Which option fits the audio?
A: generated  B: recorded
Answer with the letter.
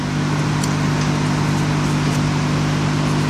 B